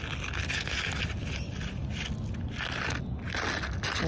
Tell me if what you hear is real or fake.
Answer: real